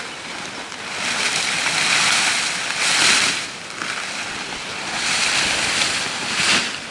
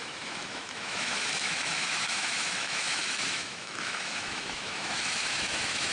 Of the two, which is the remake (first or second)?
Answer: second